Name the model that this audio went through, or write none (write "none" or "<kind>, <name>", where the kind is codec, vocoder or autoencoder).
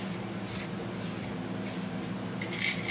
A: none